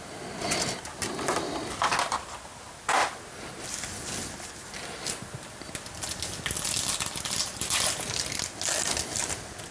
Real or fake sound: real